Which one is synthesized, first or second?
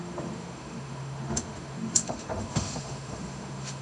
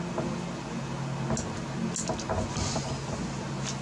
first